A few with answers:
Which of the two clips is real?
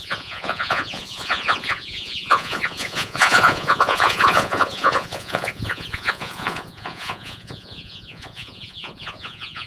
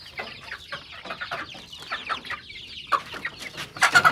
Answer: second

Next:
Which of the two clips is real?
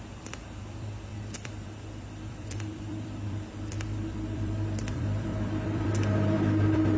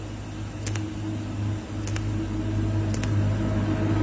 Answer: second